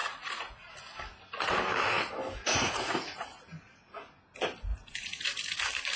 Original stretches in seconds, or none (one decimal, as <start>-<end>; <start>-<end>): 0.7-2.4; 3.4-4.7; 5.6-6.0